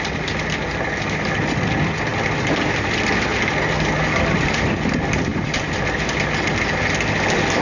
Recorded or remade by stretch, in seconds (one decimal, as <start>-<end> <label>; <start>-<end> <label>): 0.0-7.6 recorded